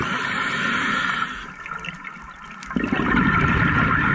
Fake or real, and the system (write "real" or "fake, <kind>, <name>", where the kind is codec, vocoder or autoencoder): real